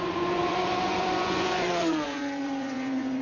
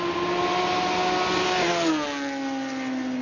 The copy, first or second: first